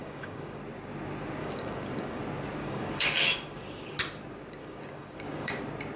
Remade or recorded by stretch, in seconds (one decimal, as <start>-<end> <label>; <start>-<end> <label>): 0.0-0.6 remade; 0.6-1.4 recorded; 1.4-2.2 remade; 2.2-2.6 recorded; 2.6-4.0 remade; 4.0-4.6 recorded; 4.6-5.6 remade; 5.6-6.0 recorded